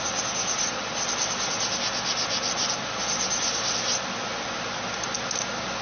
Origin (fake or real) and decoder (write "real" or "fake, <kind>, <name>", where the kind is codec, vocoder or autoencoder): real